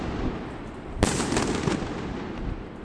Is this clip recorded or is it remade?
recorded